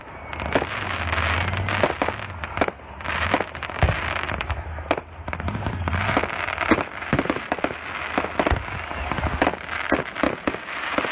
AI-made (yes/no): no